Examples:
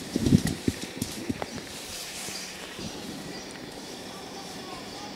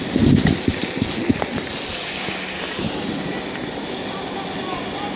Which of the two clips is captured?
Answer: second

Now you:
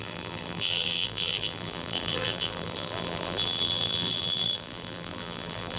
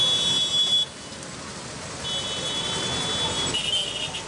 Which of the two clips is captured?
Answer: second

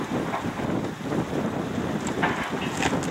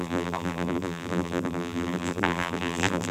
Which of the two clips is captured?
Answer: first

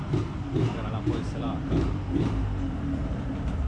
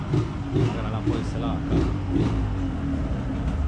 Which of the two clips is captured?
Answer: second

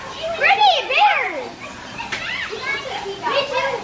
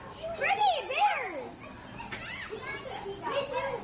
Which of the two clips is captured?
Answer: second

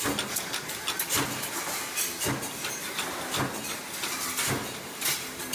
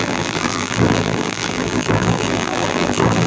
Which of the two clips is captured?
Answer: first